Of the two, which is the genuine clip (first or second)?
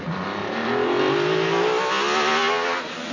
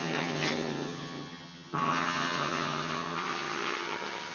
first